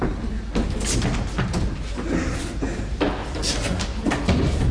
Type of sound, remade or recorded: recorded